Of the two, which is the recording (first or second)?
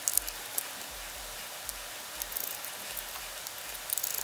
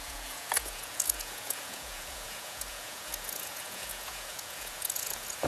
first